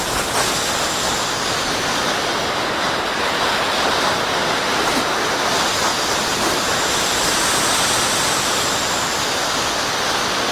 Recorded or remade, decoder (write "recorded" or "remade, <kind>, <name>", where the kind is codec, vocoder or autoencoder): recorded